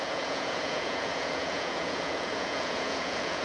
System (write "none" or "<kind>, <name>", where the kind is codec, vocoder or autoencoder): vocoder, Vocos